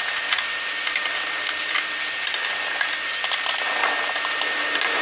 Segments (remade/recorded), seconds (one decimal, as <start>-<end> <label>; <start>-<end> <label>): 0.0-5.0 recorded